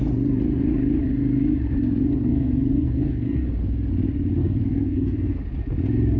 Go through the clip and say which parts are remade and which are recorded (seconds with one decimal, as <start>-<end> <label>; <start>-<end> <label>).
0.0-2.3 recorded; 2.3-3.5 remade; 3.5-4.4 recorded; 4.4-5.4 remade; 5.4-6.2 recorded